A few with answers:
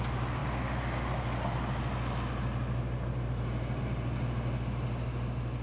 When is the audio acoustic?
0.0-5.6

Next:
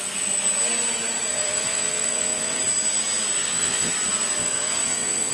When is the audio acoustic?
0.0-1.3; 2.6-3.4; 3.9-4.4

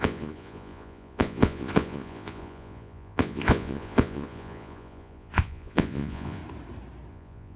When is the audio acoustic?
6.4-7.1

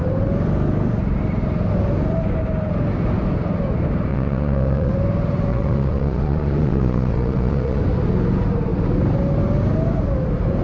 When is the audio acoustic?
0.0-4.1; 4.9-5.5; 7.8-10.6

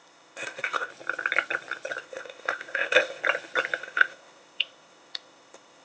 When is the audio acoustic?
0.9-2.0; 3.2-3.8

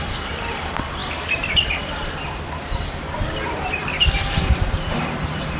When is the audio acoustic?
0.0-5.6